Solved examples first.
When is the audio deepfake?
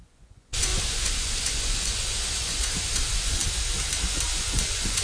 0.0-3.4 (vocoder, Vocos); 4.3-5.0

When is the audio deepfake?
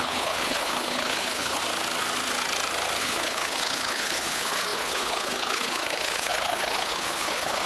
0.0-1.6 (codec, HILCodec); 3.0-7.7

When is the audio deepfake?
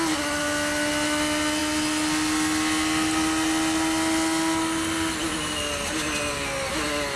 none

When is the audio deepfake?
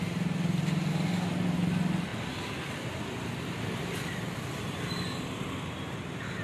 none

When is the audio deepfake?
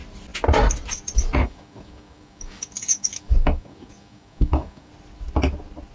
1.4-4.9 (codec, DAC)